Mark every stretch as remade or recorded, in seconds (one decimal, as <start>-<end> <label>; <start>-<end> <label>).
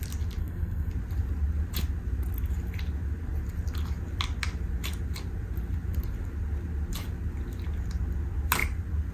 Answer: 0.0-0.4 recorded; 0.4-0.9 remade; 0.9-9.1 recorded